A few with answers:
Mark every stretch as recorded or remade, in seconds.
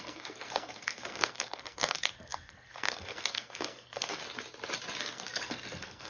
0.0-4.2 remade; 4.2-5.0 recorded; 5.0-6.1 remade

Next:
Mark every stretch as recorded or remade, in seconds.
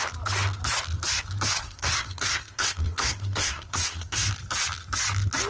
0.0-1.6 recorded; 1.6-4.3 remade; 4.3-5.5 recorded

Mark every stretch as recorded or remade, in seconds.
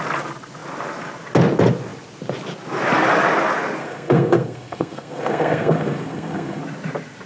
0.0-3.8 recorded; 3.8-6.6 remade; 6.6-7.3 recorded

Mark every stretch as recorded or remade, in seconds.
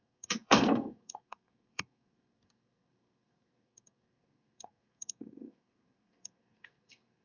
0.0-7.2 remade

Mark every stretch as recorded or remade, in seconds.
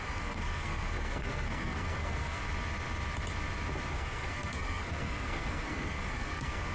0.0-2.4 remade; 2.4-3.9 recorded; 3.9-6.7 remade